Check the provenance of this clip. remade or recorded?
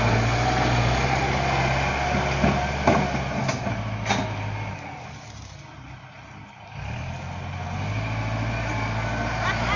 recorded